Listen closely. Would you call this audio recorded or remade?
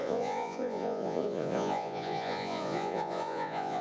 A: remade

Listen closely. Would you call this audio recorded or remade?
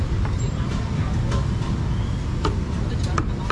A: recorded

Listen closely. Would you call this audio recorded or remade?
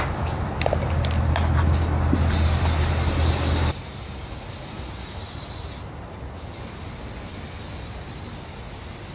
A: recorded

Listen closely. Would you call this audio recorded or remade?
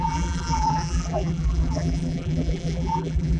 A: remade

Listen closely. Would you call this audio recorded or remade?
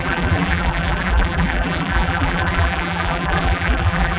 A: remade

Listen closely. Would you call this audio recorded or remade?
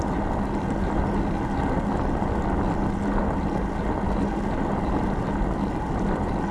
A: recorded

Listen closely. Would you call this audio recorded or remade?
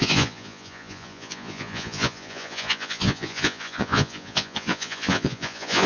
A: remade